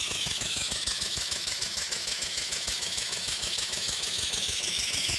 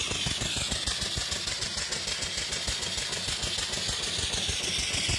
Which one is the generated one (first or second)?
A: first